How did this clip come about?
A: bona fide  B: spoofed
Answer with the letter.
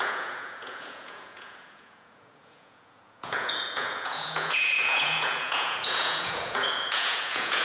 B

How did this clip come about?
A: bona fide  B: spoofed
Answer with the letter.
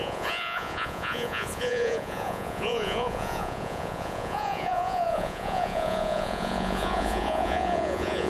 B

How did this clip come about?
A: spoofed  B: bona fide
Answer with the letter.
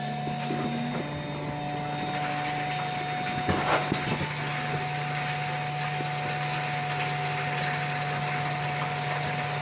B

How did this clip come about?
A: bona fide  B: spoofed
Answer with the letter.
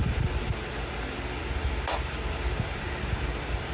A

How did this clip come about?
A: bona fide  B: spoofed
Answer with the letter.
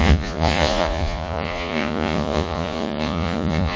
B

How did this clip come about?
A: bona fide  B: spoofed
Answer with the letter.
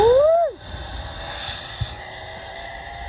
A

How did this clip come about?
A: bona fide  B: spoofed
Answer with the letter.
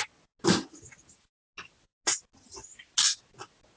A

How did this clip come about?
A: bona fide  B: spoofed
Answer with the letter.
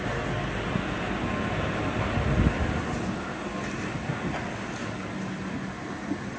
A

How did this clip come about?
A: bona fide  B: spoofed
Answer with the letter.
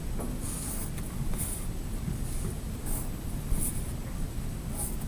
A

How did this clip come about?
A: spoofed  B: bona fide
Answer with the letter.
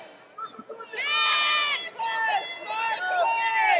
B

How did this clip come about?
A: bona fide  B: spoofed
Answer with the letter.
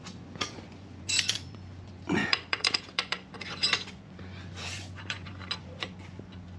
B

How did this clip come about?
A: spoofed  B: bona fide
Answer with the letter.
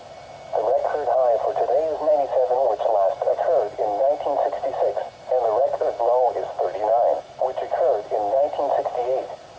B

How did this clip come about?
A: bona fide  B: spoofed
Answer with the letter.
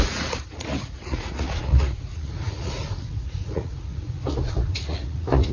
B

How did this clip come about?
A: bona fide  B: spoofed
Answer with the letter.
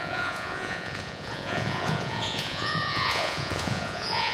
B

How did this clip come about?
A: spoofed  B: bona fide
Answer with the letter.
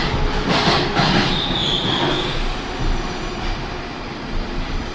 B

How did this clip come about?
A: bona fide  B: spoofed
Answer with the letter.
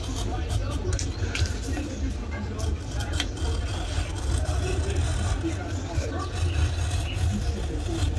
A